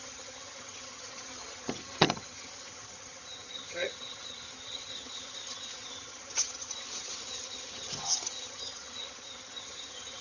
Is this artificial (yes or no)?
yes